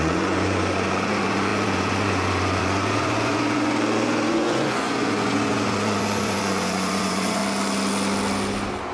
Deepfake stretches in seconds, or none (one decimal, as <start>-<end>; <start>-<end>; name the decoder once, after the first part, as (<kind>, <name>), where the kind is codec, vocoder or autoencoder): 0.0-7.4 (vocoder, Vocos)